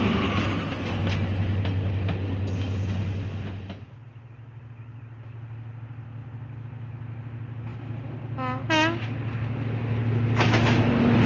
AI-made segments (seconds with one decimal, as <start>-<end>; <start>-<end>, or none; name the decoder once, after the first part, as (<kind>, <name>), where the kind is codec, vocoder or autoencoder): none